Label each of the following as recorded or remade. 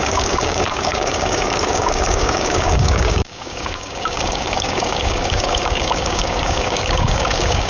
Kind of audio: remade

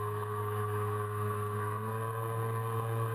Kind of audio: remade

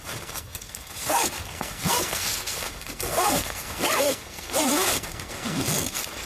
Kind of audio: remade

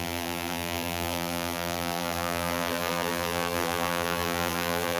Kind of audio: remade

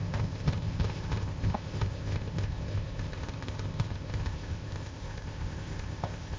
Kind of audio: remade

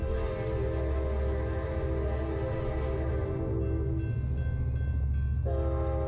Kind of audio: recorded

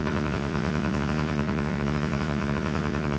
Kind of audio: remade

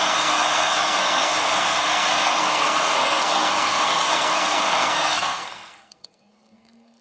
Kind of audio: remade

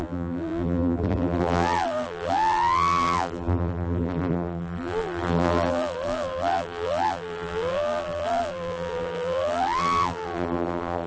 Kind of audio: remade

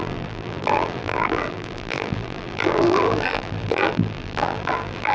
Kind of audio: remade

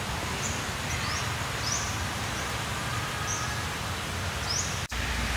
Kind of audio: remade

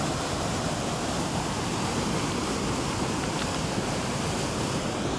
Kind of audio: recorded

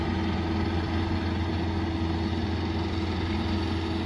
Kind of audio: recorded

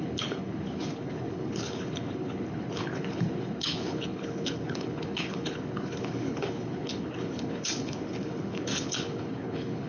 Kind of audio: remade